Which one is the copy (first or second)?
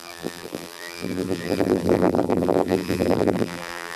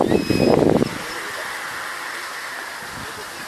first